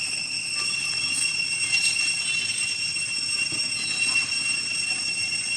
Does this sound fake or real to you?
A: real